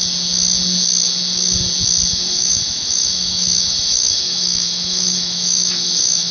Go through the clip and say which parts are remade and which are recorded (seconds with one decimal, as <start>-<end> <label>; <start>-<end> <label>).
0.0-2.1 recorded; 2.1-6.3 remade